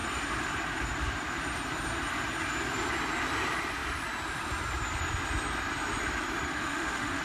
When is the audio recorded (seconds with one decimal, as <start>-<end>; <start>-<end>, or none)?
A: 0.0-6.5